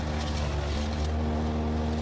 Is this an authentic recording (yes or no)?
yes